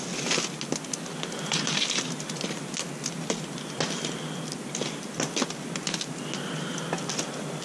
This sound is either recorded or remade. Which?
recorded